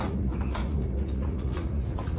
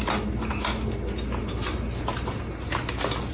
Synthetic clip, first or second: first